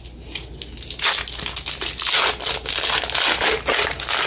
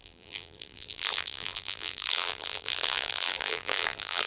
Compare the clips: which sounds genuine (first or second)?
first